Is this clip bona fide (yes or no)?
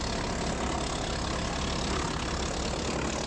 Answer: yes